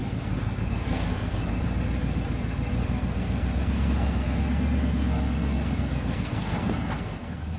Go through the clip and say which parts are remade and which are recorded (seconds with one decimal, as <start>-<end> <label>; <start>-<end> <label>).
0.0-1.6 remade; 1.6-2.8 recorded; 2.8-7.6 remade